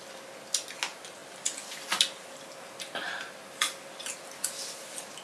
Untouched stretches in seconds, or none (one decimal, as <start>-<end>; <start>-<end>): 0.0-5.2